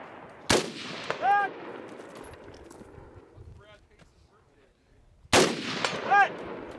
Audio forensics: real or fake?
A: real